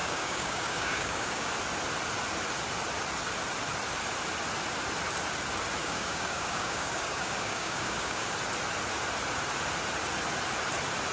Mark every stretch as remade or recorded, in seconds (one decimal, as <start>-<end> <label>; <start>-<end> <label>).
0.0-1.5 remade; 1.5-5.8 recorded; 5.8-8.3 remade; 8.3-11.1 recorded